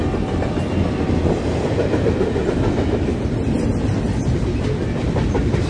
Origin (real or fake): real